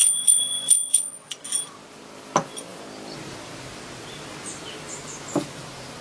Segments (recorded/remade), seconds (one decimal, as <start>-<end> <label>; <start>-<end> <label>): 0.0-1.4 remade; 1.4-6.0 recorded